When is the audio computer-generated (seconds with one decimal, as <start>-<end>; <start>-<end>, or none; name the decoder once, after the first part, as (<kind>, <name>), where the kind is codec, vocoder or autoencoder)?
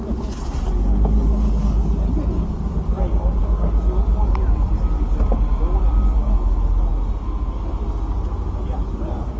none